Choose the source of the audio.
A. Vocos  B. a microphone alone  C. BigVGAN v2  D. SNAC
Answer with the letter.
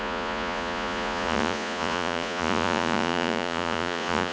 A